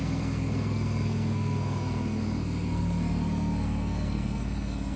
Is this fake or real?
fake